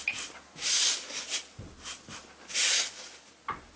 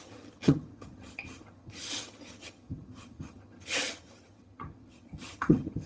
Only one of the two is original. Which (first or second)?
first